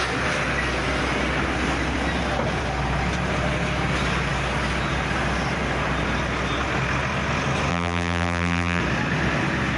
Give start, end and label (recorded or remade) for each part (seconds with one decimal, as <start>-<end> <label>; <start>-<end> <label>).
0.0-7.7 recorded; 7.7-8.8 remade; 8.8-9.8 recorded